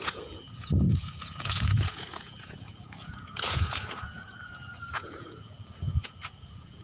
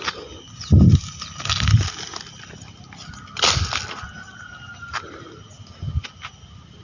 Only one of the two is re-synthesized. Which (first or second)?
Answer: first